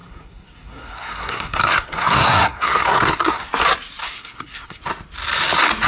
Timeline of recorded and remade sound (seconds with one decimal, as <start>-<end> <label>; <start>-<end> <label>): 0.0-3.5 remade; 3.5-4.0 recorded; 4.0-4.8 remade; 4.8-5.9 recorded